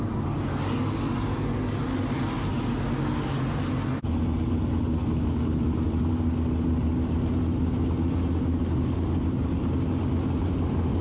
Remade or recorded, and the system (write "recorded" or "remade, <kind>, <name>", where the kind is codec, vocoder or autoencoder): recorded